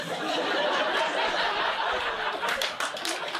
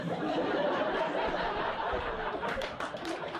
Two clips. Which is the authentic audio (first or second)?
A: first